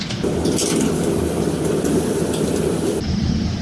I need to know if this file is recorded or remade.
recorded